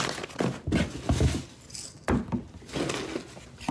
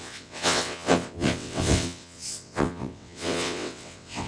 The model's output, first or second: second